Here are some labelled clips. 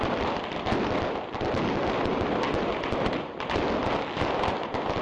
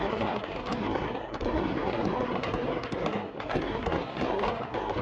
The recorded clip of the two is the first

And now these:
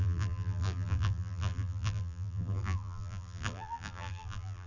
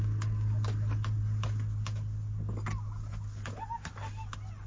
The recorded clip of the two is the second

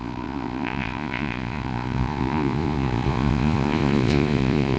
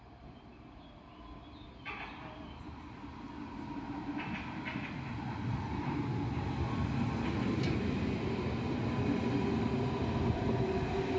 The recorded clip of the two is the second